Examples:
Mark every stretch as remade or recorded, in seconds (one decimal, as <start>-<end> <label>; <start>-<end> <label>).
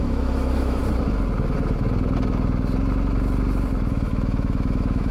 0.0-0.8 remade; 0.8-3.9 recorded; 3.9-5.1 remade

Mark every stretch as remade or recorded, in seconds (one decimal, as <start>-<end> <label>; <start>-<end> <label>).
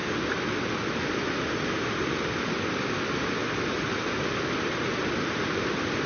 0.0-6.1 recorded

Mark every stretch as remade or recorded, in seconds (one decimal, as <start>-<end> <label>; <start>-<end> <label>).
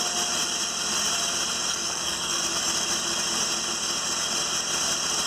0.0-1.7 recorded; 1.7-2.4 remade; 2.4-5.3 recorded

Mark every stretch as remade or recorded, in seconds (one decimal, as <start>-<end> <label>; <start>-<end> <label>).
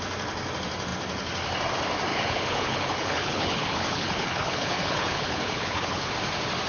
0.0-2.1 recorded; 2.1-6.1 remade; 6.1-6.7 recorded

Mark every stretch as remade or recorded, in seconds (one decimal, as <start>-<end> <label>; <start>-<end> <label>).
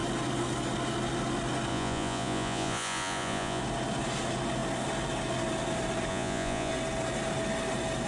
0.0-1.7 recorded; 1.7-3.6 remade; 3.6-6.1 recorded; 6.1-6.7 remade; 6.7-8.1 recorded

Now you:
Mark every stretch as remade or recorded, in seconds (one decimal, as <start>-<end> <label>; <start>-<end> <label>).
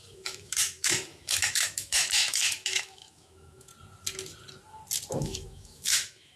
0.0-3.7 remade; 3.7-5.2 recorded; 5.2-6.4 remade